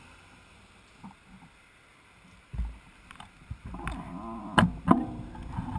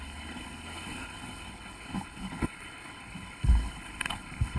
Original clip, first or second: first